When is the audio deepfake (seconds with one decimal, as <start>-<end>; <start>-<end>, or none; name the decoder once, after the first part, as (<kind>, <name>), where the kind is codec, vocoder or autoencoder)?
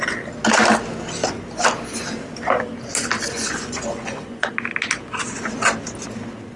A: 3.3-4.5 (vocoder, Vocos)